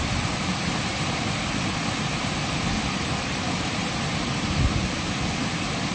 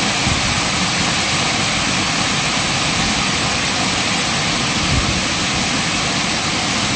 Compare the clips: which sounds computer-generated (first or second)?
first